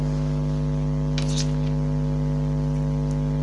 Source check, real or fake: real